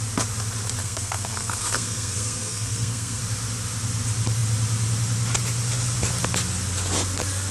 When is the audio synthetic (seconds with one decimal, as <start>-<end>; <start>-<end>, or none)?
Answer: 0.8-3.2

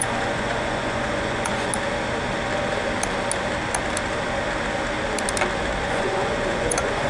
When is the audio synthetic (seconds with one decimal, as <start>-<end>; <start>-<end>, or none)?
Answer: 0.0-1.7; 5.8-7.1